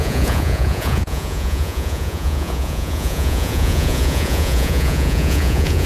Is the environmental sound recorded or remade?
remade